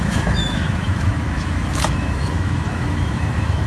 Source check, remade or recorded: remade